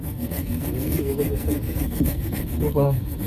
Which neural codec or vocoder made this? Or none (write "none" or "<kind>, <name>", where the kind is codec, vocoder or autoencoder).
codec, SNAC